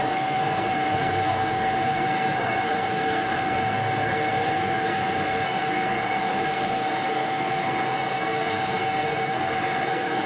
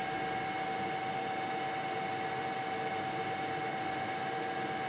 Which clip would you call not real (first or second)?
first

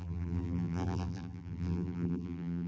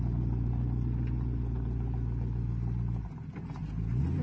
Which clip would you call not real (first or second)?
first